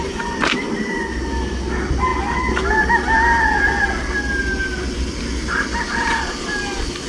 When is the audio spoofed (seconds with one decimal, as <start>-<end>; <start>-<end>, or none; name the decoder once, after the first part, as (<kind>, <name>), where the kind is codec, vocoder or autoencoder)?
none

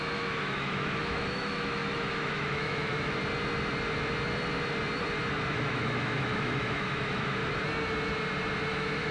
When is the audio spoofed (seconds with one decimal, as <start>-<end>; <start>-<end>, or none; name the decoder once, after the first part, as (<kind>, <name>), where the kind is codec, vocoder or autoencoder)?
0.0-3.2 (autoencoder, DAC-VAE); 5.5-7.4; 8.7-9.1

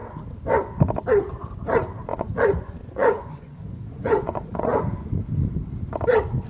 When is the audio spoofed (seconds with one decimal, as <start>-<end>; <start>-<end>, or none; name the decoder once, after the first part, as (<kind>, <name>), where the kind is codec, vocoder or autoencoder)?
2.1-4.9 (vocoder, Vocos)

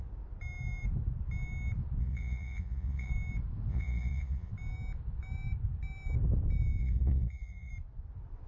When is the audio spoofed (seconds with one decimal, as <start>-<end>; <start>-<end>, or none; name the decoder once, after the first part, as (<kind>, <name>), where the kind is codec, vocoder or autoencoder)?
2.0-3.1 (vocoder, Vocos); 3.7-4.5; 6.8-7.7

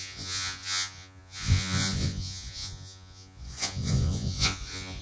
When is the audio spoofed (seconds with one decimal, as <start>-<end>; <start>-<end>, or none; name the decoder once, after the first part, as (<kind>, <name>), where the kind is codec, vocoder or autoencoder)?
0.0-5.0 (vocoder, Vocos)

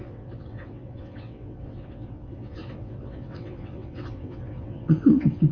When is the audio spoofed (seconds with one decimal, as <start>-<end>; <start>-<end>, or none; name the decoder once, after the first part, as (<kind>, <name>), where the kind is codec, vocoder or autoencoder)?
0.0-5.5 (vocoder, WaveNeXt)